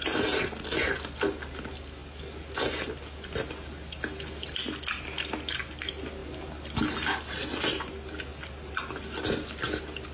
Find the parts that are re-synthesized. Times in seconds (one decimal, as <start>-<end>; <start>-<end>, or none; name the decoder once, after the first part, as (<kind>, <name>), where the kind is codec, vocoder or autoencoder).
none